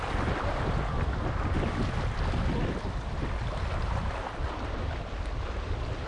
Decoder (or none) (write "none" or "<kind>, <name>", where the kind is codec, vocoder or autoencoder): none